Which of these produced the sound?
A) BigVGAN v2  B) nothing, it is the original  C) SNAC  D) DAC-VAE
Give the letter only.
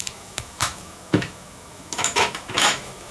D